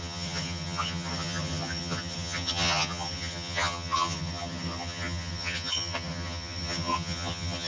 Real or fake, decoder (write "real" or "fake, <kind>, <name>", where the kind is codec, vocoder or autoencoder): fake, vocoder, HiFi-GAN